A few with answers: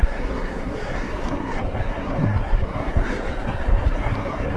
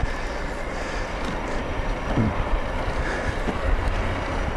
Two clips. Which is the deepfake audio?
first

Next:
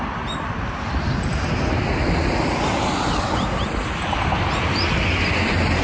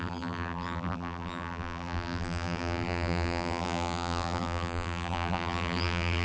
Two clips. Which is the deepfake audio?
second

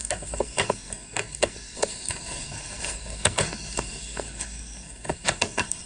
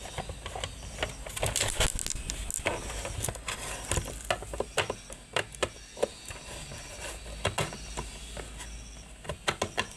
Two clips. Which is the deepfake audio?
first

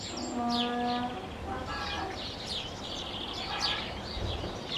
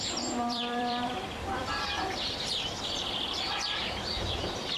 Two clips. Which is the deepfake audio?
second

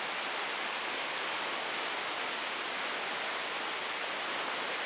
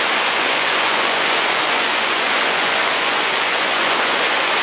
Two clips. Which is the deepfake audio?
second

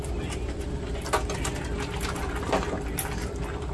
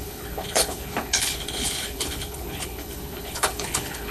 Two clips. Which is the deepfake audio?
second